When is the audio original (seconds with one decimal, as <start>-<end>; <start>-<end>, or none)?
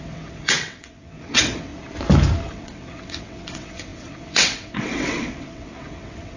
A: 1.7-2.5